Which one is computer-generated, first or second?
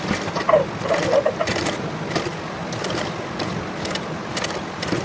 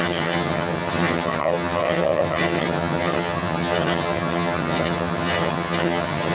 second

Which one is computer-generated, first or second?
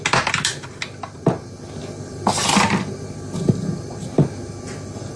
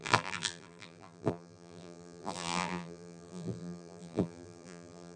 second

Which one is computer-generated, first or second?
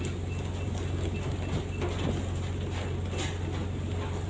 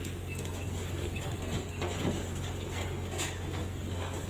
second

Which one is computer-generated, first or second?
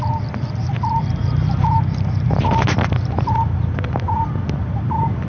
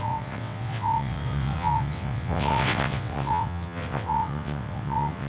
second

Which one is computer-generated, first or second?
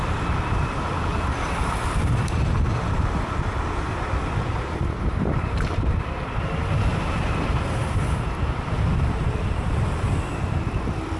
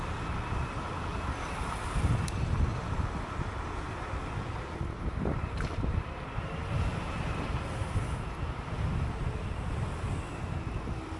first